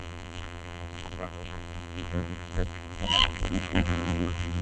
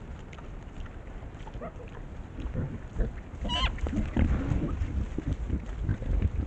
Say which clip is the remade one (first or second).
first